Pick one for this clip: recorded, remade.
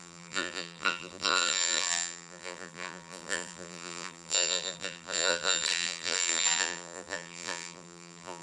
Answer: remade